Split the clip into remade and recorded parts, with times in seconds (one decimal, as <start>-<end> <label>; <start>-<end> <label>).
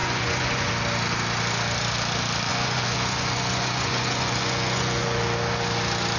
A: 0.0-0.7 remade; 0.7-2.5 recorded; 2.5-5.2 remade; 5.2-6.2 recorded